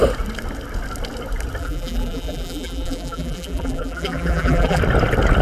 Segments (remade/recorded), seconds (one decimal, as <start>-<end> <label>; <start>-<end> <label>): 0.0-1.6 recorded; 1.6-4.8 remade; 4.8-5.4 recorded